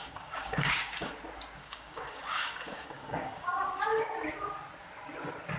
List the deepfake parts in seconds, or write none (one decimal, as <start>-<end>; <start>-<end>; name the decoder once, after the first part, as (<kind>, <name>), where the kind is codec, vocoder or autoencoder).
0.0-1.1 (codec, DAC); 1.6-3.8